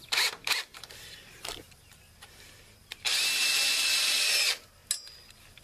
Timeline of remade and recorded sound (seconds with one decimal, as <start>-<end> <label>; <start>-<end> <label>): 0.0-4.8 remade; 4.8-5.6 recorded